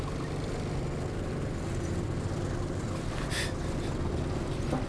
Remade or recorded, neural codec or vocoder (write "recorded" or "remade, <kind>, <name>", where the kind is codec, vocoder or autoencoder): recorded